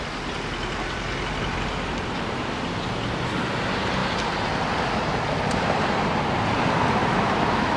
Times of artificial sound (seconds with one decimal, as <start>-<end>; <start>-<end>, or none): 7.0-7.8